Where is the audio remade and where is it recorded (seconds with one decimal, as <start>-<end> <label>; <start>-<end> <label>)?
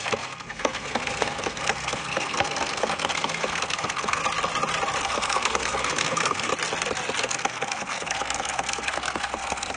0.0-4.2 remade; 4.2-5.0 recorded; 5.0-6.5 remade; 6.5-7.2 recorded; 7.2-9.8 remade